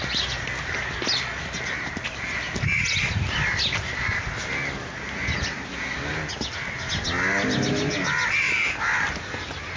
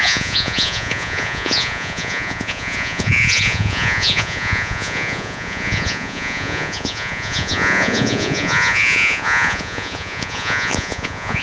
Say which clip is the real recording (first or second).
first